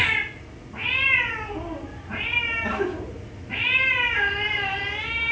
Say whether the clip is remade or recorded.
recorded